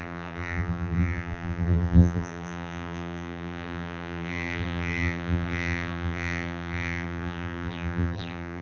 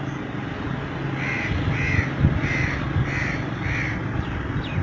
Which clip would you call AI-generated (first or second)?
first